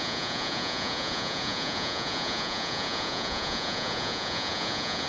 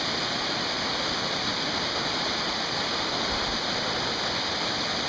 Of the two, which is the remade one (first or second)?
first